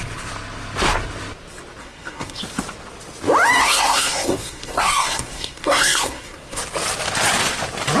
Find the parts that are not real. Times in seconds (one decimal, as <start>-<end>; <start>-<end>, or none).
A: 1.8-2.4; 3.6-6.6